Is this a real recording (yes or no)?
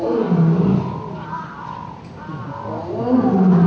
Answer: yes